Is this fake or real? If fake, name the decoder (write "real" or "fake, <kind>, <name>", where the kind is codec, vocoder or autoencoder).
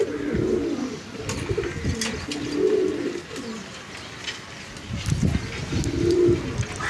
real